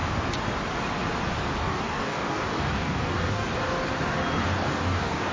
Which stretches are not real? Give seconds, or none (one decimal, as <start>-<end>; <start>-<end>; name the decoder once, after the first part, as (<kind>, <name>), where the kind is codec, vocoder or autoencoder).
1.6-3.5 (codec, DAC); 4.4-5.3